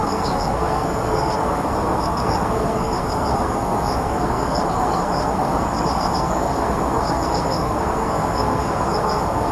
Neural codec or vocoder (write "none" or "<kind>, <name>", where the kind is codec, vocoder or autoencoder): codec, SNAC